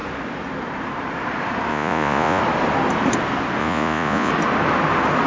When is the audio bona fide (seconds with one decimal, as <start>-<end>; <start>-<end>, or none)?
0.0-1.7; 2.4-3.6; 4.3-5.3